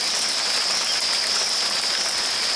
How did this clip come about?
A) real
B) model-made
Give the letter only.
A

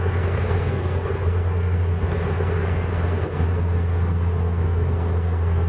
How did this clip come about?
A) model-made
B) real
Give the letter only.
A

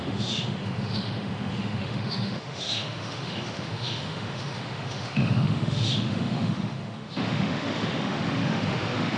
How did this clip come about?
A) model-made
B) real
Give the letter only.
A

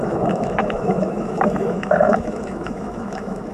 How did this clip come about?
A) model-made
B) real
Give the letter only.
A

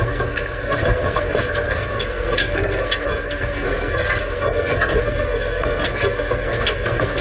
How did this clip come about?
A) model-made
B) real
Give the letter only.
A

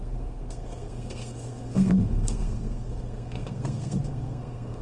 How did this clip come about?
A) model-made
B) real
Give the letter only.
A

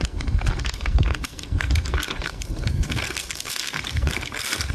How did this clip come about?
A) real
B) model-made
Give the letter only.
B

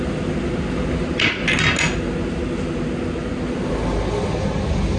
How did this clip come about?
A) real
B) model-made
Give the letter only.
A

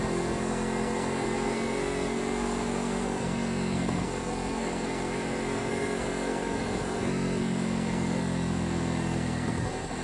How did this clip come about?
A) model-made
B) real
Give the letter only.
A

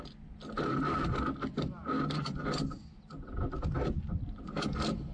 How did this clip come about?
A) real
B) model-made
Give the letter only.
A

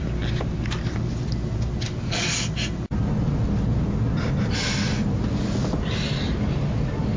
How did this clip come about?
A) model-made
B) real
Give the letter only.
B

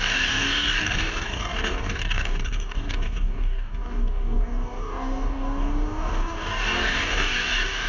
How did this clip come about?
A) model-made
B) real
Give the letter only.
A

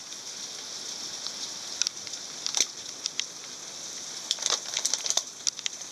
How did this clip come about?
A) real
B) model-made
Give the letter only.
A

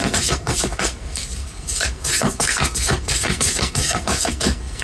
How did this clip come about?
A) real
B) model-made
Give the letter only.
B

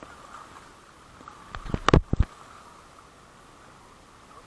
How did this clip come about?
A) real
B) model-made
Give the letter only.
A